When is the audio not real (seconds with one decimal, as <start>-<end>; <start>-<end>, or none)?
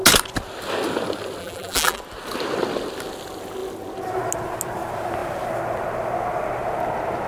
1.4-2.0